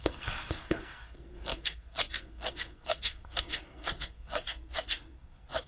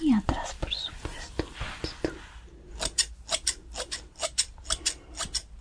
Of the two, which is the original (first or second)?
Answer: second